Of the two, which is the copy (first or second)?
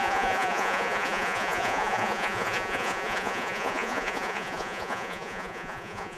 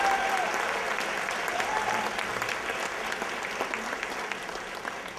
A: first